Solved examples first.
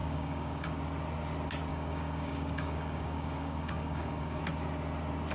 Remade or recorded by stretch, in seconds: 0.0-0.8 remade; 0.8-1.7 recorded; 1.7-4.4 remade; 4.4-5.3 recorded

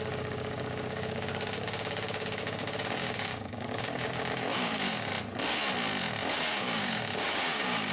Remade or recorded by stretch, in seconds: 0.0-5.1 remade; 5.1-6.2 recorded; 6.2-7.9 remade

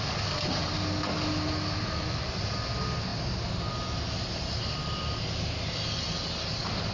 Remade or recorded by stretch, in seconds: 0.0-6.9 recorded

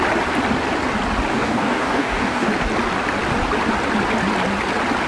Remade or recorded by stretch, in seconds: 0.0-1.3 recorded; 1.3-2.5 remade; 2.5-5.1 recorded

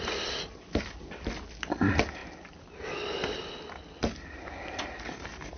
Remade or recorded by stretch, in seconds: 0.0-5.6 recorded

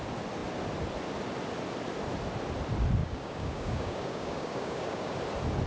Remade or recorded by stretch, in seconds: 0.0-3.0 recorded; 3.0-5.2 remade; 5.2-5.7 recorded

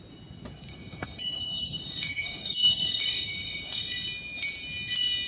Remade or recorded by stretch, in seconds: 0.0-0.7 recorded; 0.7-3.9 remade; 3.9-5.3 recorded

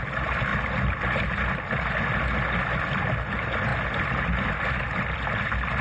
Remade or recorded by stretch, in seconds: 0.0-5.8 recorded